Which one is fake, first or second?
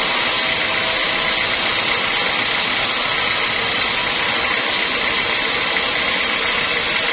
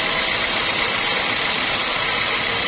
second